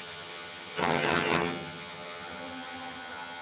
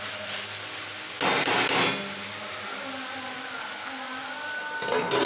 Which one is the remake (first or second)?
first